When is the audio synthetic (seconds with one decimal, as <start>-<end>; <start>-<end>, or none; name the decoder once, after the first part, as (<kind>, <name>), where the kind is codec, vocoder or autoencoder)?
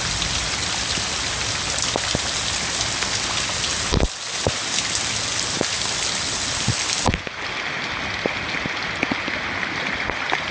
none